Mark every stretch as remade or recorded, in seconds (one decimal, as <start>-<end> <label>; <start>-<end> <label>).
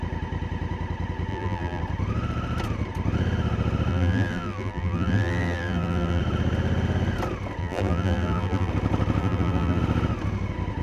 0.0-1.3 recorded; 1.3-1.8 remade; 1.8-3.9 recorded; 3.9-6.2 remade; 6.2-7.6 recorded; 7.6-8.7 remade; 8.7-9.2 recorded; 9.2-9.8 remade; 9.8-10.8 recorded